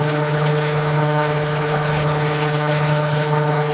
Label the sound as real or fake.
fake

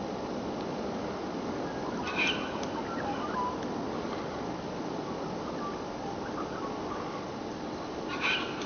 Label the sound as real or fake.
real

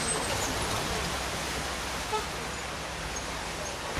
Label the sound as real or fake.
real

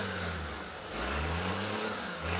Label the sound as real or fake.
fake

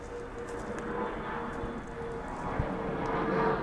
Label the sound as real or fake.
real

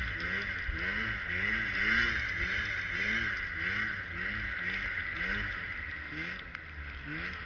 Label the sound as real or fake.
real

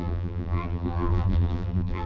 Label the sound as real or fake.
fake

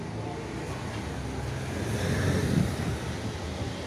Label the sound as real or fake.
real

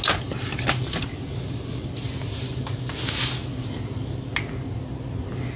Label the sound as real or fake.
real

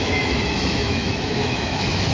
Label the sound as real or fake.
fake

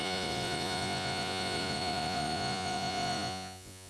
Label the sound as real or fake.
fake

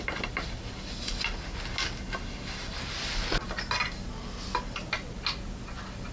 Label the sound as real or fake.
real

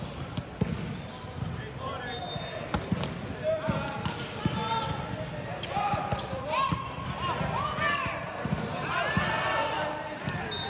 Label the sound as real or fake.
real